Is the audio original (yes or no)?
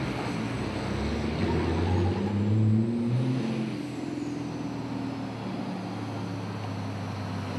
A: yes